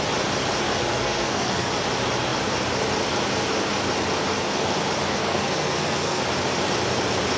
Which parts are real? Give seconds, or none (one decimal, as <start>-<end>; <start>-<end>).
0.0-0.8; 1.7-5.1; 6.2-7.4